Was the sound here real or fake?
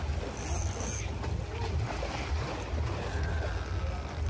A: real